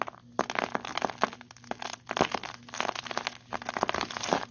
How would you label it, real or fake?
real